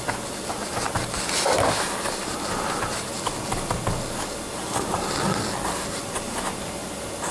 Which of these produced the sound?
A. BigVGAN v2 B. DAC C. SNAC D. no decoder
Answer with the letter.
D